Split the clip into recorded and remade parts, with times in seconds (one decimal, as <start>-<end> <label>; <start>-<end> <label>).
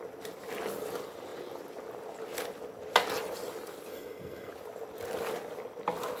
0.0-3.9 recorded; 3.9-4.5 remade; 4.5-6.2 recorded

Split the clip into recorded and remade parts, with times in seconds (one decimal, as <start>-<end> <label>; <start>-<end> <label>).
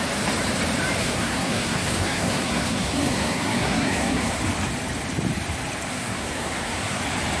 0.0-1.0 recorded; 1.0-4.4 remade; 4.4-5.9 recorded; 5.9-7.0 remade; 7.0-7.4 recorded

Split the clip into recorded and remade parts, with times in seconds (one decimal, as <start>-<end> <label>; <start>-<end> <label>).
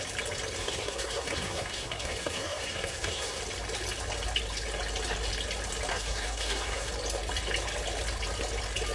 0.0-0.6 recorded; 0.6-3.4 remade; 3.4-5.9 recorded; 5.9-6.9 remade; 6.9-8.9 recorded